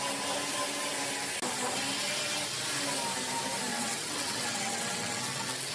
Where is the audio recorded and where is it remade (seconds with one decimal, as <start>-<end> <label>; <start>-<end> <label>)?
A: 0.0-3.7 recorded; 3.7-5.7 remade